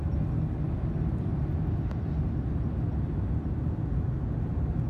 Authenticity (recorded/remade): recorded